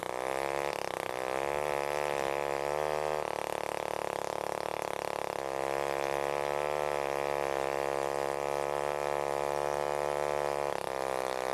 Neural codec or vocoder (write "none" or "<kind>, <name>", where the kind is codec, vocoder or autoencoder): none